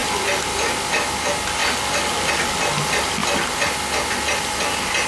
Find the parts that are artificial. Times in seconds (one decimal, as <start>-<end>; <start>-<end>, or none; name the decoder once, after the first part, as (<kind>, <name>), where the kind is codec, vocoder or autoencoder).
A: none

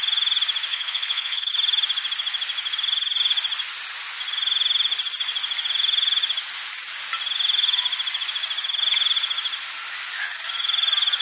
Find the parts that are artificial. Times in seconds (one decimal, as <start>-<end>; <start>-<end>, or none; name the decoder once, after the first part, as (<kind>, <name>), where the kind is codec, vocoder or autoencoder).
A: 0.7-1.5 (codec, HILCodec)